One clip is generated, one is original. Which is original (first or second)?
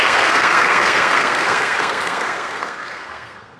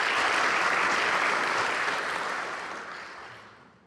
second